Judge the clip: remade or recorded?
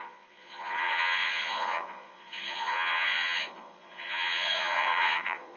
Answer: remade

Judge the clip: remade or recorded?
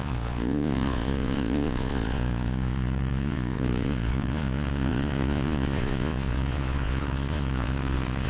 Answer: remade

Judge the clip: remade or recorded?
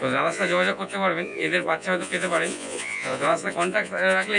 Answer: remade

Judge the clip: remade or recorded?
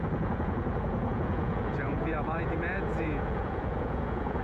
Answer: remade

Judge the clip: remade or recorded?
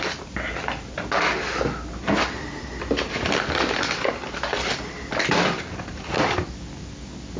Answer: recorded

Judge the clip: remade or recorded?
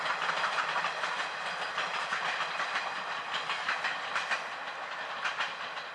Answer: recorded